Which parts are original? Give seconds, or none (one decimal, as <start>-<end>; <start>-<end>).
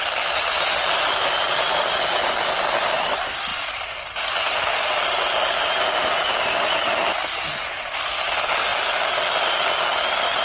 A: 0.0-10.4